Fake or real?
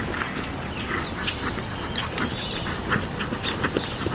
real